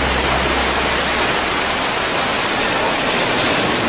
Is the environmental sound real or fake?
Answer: real